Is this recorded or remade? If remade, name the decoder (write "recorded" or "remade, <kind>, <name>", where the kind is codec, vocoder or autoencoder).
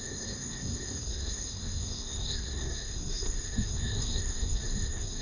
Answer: remade, codec, SNAC